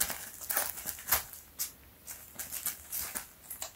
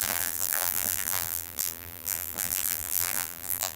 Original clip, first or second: first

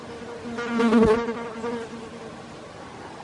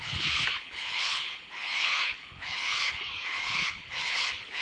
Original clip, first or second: first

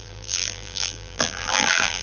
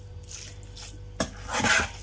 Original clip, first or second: second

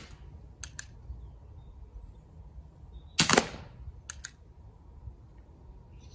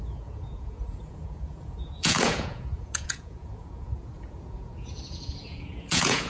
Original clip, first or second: first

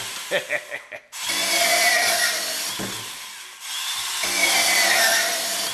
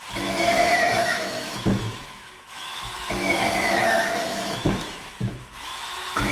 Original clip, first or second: first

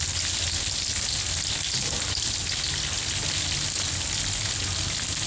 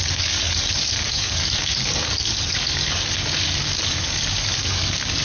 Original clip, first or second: first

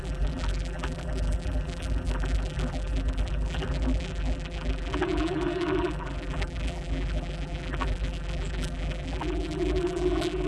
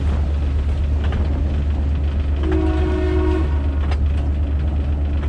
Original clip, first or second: second